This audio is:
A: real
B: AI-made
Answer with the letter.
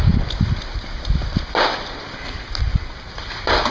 A